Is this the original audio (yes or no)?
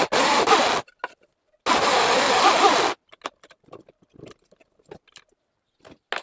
yes